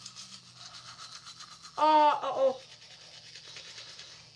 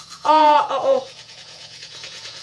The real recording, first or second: first